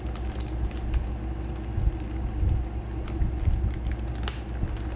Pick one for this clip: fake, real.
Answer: real